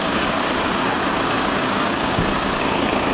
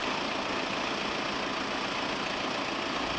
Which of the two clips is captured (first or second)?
second